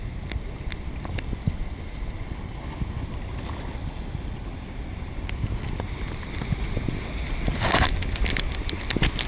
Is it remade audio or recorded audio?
recorded